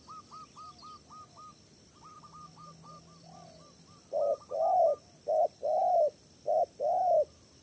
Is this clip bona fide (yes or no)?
yes